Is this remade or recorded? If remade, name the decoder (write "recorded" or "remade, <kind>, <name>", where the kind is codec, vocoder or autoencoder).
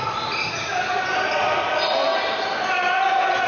recorded